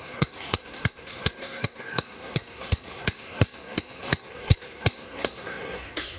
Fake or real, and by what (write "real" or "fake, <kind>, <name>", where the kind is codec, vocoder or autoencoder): fake, codec, SNAC